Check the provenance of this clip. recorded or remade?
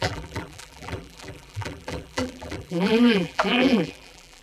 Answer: remade